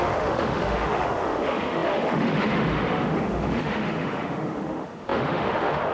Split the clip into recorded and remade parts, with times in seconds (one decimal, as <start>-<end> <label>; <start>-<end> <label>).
0.0-5.9 remade